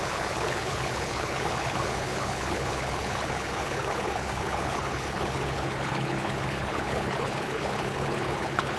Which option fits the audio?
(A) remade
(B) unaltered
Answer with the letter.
A